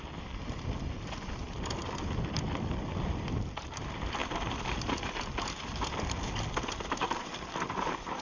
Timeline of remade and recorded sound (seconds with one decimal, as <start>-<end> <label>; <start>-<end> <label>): 0.0-8.2 recorded